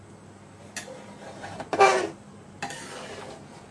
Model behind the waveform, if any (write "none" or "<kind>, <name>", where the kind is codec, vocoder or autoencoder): none